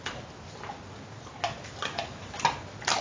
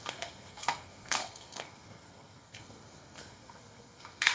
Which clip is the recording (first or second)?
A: first